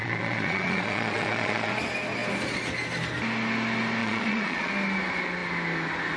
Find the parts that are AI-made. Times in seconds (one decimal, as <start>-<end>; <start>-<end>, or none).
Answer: 0.0-1.7; 4.0-4.7